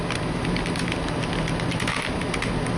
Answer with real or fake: real